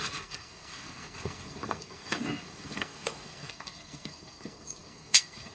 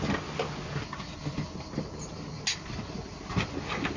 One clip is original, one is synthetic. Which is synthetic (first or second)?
first